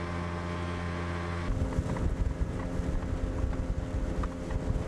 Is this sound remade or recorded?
recorded